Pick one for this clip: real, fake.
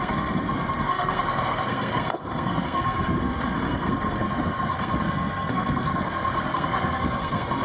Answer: fake